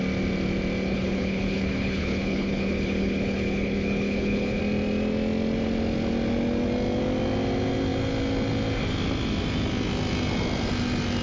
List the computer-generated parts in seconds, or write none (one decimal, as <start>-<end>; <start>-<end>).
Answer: 0.9-4.6